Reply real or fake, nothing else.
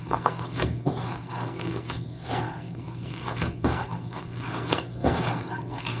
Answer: fake